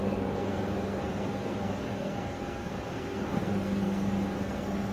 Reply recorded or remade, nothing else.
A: remade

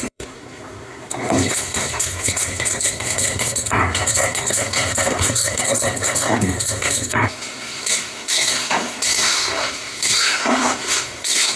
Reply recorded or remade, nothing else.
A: remade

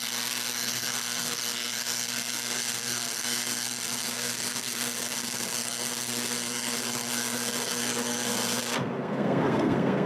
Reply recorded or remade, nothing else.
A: remade